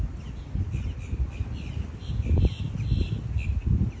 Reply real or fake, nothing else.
real